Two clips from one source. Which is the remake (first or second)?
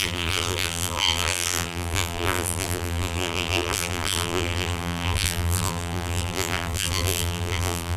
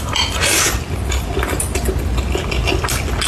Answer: first